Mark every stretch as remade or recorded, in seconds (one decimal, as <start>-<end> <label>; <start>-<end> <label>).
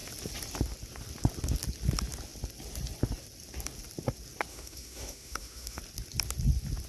0.0-4.5 recorded; 4.5-5.8 remade; 5.8-6.9 recorded